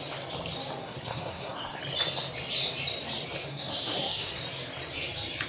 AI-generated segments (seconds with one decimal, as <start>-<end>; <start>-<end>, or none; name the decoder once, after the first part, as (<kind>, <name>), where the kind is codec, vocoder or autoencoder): 0.8-1.8 (codec, SNAC); 3.5-4.4